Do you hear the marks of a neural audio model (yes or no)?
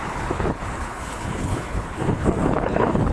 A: yes